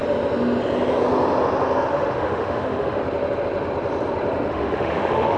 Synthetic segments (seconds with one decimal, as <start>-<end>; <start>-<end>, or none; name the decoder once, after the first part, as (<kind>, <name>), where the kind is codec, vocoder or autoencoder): 1.9-3.0 (autoencoder, DAC-VAE); 4.5-5.4